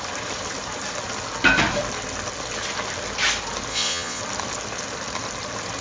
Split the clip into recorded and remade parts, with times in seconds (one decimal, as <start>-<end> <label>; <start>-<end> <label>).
0.0-3.7 recorded; 3.7-4.2 remade; 4.2-5.8 recorded